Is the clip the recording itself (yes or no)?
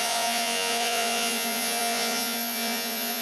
no